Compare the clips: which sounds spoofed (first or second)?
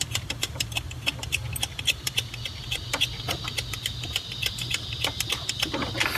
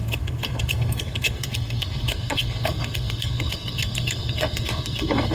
second